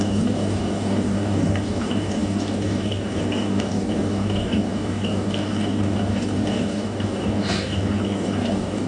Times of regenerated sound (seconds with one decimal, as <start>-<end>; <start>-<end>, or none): 0.0-8.9